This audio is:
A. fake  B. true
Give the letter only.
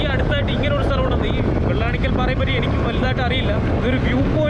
B